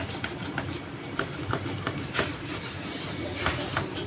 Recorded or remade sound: recorded